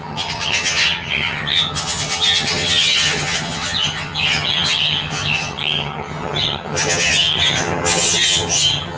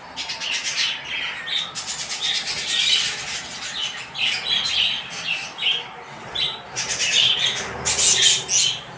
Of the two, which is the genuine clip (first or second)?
second